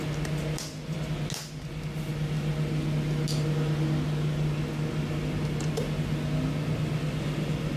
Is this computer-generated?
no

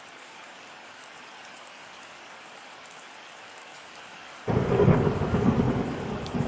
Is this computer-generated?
yes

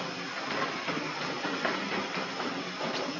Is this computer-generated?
no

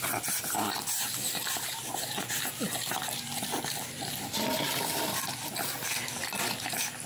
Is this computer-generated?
no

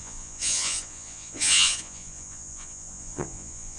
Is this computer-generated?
yes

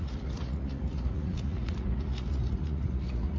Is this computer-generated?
yes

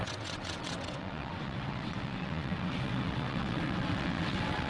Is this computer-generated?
yes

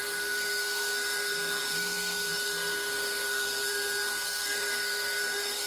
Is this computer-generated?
yes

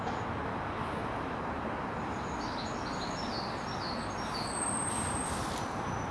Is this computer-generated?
no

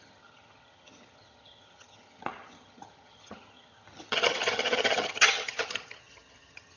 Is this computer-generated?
yes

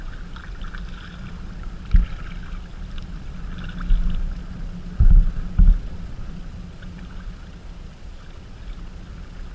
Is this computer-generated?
no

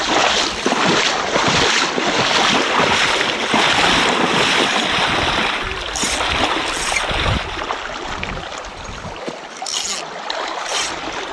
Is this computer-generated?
no